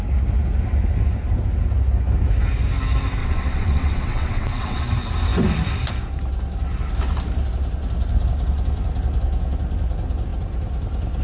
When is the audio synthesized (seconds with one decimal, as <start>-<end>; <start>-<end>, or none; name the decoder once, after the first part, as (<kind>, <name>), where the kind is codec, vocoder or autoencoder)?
3.2-4.8 (vocoder, WaveNeXt)